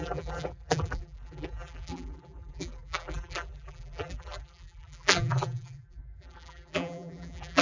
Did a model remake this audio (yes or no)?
yes